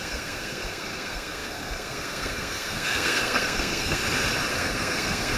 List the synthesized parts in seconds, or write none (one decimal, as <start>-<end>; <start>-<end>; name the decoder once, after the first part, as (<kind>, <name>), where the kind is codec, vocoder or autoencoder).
0.0-4.0 (codec, SNAC); 4.5-5.4